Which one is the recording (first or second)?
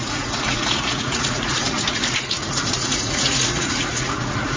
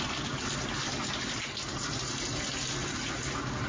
second